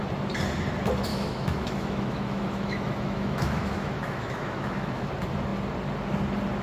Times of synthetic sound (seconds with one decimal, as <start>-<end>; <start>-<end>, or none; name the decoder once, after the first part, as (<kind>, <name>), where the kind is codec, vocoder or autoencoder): 1.1-5.1 (autoencoder, DAC-VAE)